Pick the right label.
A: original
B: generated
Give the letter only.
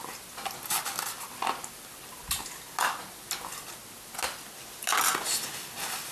A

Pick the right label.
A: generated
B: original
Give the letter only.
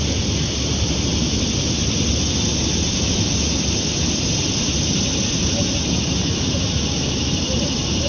B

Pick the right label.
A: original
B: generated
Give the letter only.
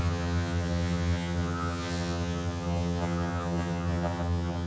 B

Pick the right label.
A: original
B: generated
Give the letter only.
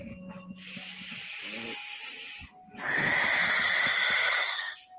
A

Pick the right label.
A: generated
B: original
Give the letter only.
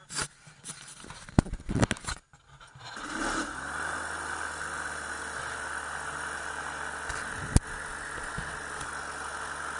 B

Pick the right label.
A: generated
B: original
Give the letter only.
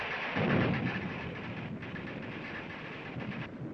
B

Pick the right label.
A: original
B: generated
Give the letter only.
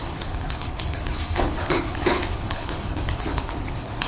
B